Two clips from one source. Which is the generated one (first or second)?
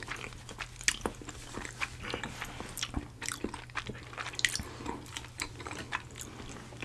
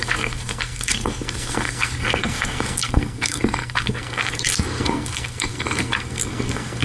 second